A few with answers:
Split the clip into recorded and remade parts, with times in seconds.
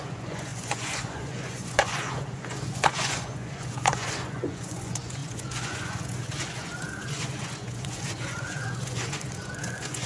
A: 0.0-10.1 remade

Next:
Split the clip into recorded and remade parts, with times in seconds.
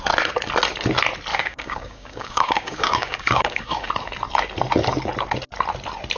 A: 0.0-1.3 recorded; 1.3-3.9 remade; 3.9-6.2 recorded